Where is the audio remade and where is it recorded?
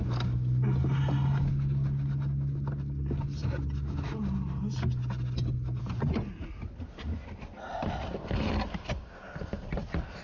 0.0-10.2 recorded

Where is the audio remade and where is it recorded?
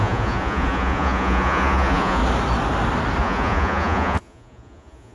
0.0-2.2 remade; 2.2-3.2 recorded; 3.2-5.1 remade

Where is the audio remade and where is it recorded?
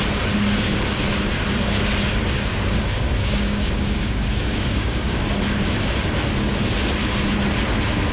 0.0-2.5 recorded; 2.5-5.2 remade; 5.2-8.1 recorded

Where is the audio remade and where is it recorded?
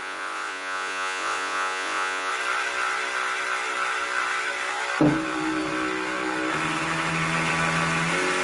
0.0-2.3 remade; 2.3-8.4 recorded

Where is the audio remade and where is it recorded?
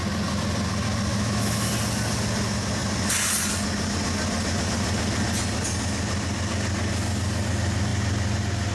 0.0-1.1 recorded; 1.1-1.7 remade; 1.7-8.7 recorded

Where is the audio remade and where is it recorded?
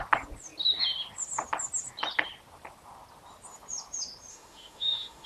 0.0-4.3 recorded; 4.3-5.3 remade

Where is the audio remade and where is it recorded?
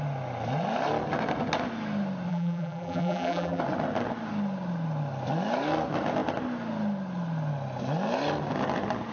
0.0-2.3 recorded; 2.3-3.6 remade; 3.6-9.1 recorded